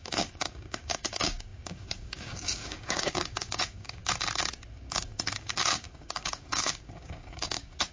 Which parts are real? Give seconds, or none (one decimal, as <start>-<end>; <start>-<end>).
4.0-4.7